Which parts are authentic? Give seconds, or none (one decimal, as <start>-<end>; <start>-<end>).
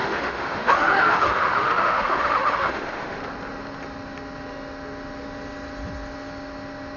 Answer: 3.2-7.0